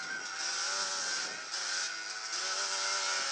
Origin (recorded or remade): recorded